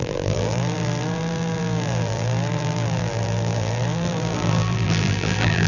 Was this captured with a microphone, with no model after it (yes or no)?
no